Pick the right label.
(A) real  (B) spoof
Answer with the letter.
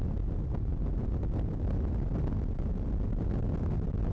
A